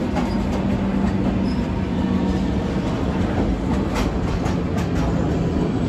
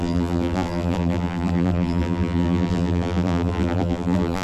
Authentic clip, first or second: first